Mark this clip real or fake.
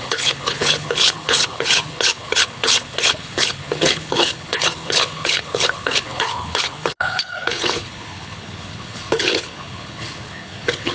fake